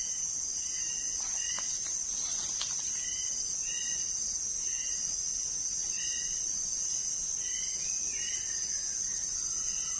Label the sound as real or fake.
real